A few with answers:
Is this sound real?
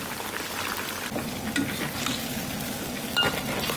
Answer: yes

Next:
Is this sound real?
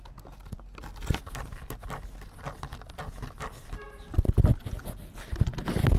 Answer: yes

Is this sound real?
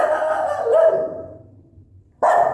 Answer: no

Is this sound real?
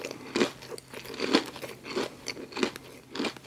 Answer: yes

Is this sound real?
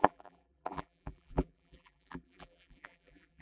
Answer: no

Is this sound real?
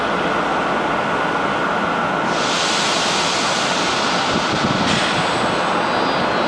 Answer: yes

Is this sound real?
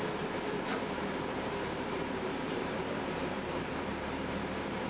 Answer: no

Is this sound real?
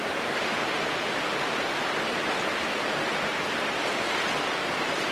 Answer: yes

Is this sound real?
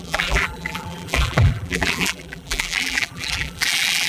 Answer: no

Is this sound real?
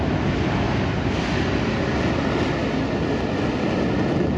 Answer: yes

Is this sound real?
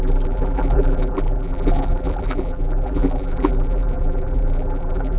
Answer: no